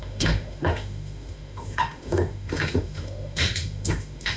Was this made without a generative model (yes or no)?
no